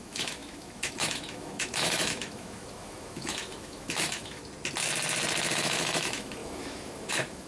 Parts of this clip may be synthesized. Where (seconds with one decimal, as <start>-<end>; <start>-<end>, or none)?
0.0-4.4; 5.5-7.5

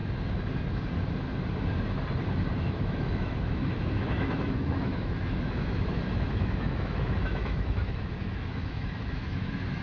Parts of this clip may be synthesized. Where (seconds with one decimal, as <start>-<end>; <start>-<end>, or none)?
2.6-9.8

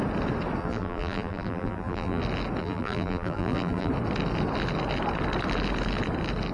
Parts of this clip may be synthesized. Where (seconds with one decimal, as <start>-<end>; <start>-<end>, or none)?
0.6-2.2; 2.6-3.9

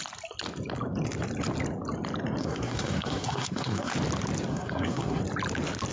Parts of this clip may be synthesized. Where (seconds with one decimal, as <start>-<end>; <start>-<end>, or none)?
2.4-3.9; 4.5-5.2

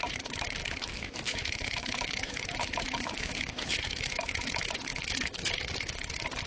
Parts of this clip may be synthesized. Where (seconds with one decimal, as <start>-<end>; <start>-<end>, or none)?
0.6-4.5; 4.9-5.5

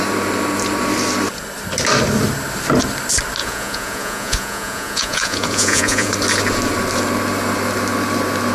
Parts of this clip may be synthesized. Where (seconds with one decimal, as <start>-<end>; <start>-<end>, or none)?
3.4-6.1